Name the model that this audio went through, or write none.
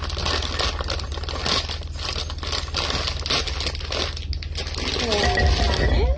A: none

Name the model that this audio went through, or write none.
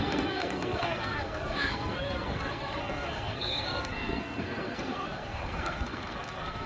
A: codec, SNAC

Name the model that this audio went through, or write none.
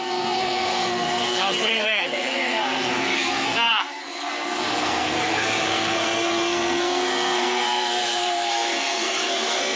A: codec, SNAC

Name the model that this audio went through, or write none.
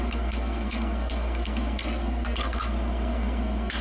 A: codec, SNAC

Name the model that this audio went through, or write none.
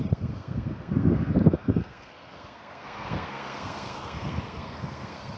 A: codec, SNAC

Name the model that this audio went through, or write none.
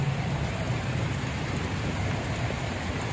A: none